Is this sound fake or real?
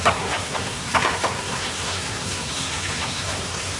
fake